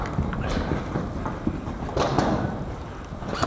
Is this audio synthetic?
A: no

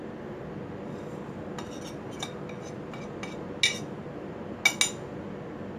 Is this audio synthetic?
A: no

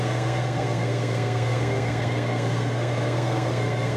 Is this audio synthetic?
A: yes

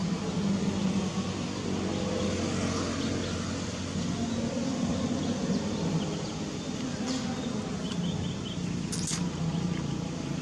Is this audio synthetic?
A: no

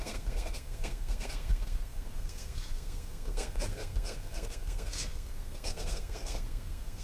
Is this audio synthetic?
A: yes